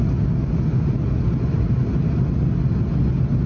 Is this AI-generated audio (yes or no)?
no